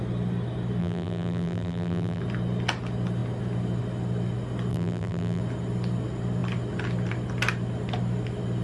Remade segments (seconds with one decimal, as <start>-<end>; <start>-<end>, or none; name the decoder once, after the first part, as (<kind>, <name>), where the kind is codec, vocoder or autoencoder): 0.8-2.2 (vocoder, BigVGAN v2); 4.7-5.4